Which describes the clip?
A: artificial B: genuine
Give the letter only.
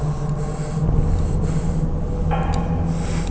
B